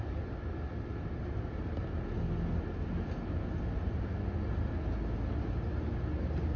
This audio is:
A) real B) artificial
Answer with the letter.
A